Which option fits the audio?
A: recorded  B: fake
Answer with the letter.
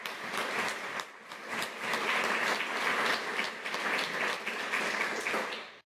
A